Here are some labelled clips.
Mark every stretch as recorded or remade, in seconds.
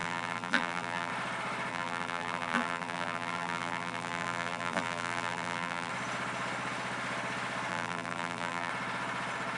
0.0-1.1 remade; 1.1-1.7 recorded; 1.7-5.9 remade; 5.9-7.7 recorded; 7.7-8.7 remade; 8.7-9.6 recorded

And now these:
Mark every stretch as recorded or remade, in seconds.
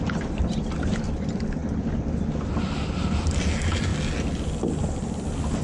0.0-5.6 recorded